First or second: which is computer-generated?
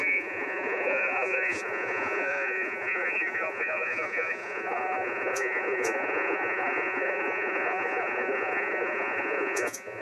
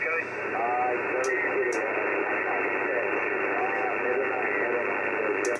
first